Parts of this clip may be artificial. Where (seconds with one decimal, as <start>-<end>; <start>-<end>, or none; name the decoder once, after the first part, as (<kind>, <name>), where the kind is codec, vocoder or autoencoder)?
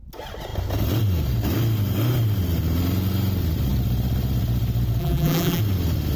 5.0-5.6 (vocoder, BigVGAN v2)